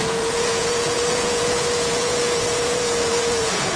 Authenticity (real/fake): fake